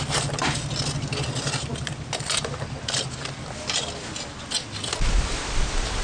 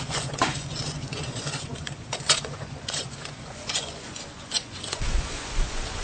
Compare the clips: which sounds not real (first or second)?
second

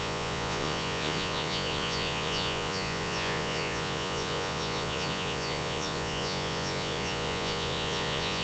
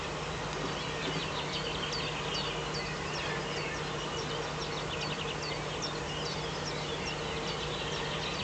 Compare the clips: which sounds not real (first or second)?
first